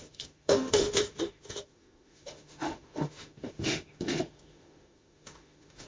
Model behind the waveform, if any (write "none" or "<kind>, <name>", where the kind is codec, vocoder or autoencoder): autoencoder, DAC-VAE